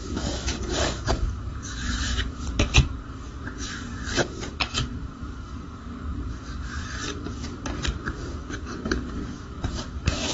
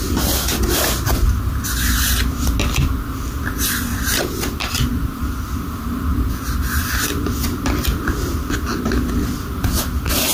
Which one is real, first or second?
second